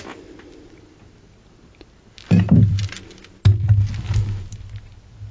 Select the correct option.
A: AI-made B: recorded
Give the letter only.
B